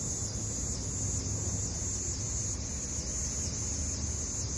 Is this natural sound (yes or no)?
yes